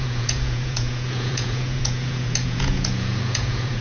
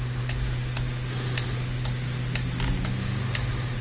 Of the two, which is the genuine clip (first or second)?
second